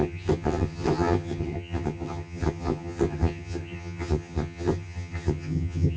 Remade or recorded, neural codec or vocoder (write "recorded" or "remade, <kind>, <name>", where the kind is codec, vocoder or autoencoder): remade, vocoder, HiFi-GAN